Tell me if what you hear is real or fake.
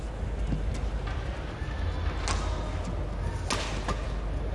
real